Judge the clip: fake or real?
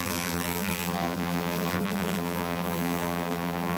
fake